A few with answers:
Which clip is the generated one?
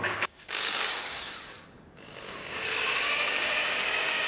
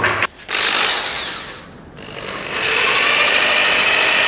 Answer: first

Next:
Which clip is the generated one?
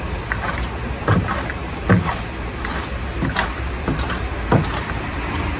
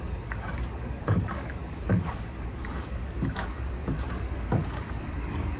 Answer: second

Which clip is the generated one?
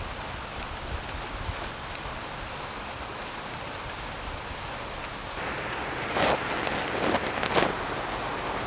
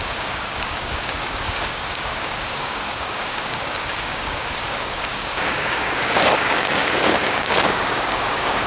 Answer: second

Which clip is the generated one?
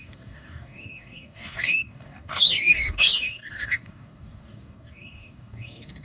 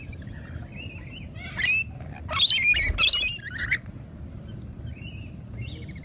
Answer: first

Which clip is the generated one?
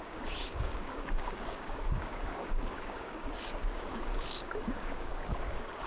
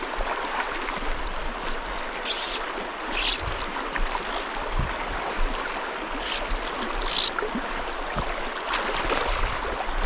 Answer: first